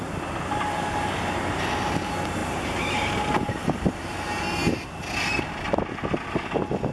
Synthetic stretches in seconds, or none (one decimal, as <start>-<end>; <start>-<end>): 2.4-3.9